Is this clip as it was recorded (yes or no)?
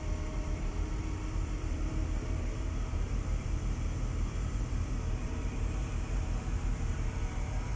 no